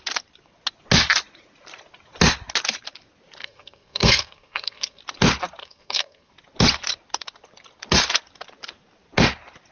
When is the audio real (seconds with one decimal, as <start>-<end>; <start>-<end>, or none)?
0.0-3.4; 5.0-5.6; 6.3-9.7